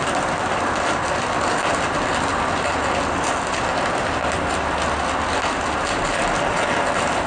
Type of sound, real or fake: real